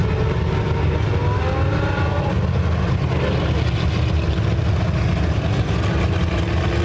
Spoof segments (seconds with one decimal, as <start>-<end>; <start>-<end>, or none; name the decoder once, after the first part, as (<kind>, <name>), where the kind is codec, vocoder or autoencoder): none